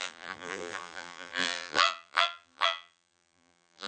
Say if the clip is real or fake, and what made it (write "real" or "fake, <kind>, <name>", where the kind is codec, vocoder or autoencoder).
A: fake, vocoder, BigVGAN v2